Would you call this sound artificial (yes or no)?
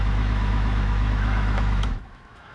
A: yes